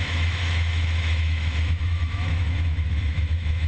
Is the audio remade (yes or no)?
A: yes